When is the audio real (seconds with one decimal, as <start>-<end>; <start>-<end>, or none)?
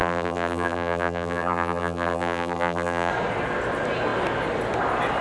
3.1-5.2